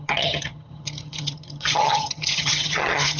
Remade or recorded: remade